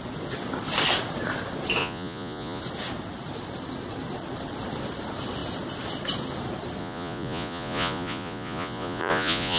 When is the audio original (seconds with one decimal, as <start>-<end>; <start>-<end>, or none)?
0.0-1.8; 2.6-6.8